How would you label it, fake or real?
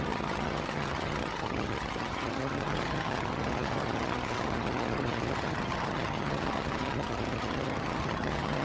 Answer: fake